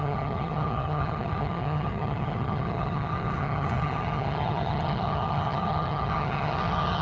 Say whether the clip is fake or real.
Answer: fake